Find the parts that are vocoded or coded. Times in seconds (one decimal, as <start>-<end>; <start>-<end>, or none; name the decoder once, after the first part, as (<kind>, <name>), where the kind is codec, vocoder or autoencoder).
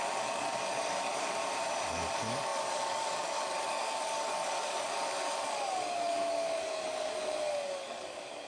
0.0-1.4 (codec, DAC); 1.9-8.5